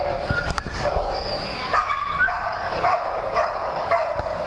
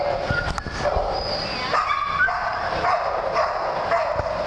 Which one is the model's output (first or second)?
first